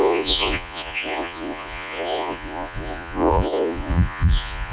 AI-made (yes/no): yes